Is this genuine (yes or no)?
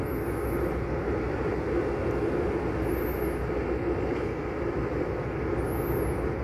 yes